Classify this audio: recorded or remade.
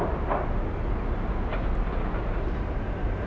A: recorded